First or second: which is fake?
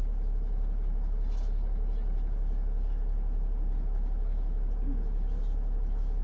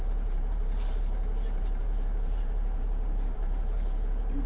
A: second